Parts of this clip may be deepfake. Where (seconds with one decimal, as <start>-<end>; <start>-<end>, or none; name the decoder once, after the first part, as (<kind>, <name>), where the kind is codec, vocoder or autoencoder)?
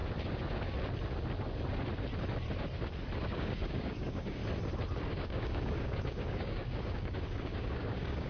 3.2-4.4 (codec, DAC); 5.1-8.3